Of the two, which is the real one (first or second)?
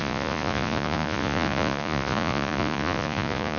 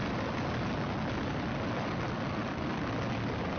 second